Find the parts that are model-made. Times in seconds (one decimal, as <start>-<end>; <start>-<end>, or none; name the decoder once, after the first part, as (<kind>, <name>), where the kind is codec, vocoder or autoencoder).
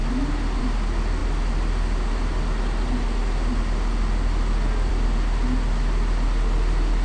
none